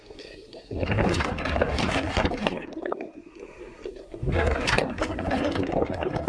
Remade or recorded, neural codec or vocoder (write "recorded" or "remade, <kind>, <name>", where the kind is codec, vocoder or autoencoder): remade, codec, SNAC